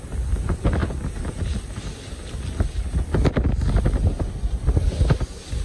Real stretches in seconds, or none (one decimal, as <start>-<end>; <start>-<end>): 0.0-5.6